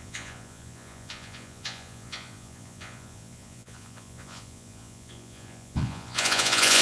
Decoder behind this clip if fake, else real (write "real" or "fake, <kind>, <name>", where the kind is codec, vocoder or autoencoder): fake, vocoder, Vocos